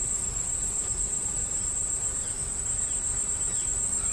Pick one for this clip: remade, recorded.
recorded